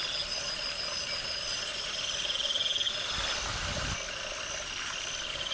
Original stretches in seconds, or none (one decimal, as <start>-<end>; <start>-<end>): 0.0-5.5